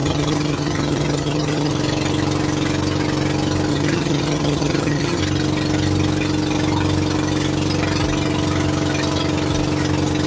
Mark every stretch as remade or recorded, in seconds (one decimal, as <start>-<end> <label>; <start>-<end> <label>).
0.0-1.7 remade; 1.7-3.7 recorded; 3.7-5.2 remade; 5.2-10.3 recorded